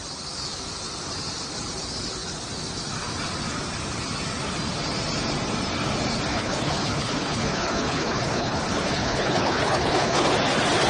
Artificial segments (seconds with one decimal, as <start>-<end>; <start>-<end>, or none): 6.3-10.3